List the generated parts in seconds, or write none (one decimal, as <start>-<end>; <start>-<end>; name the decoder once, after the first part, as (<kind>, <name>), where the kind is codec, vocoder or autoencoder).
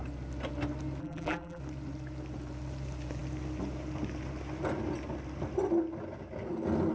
1.0-1.6 (vocoder, BigVGAN v2)